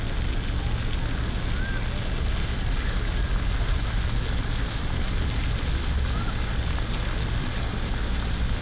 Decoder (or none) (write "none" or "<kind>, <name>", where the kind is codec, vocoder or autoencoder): none